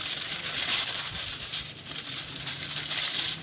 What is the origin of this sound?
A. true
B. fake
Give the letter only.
A